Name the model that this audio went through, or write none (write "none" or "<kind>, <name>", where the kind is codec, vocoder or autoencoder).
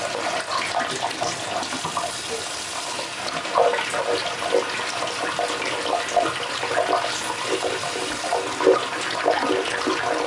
none